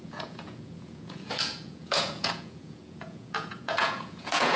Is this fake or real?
fake